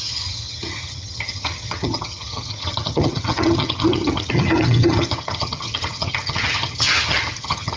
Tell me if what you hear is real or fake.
fake